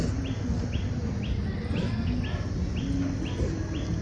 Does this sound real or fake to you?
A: real